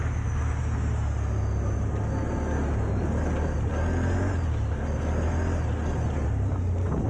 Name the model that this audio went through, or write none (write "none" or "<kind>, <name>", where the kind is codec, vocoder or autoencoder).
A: none